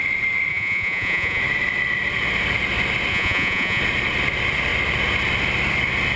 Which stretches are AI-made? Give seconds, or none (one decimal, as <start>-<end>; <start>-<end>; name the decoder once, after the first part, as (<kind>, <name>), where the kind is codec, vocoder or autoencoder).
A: 0.5-1.4 (vocoder, Vocos); 3.1-3.8